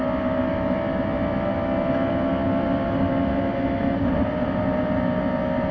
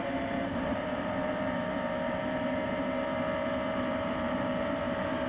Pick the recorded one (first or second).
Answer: first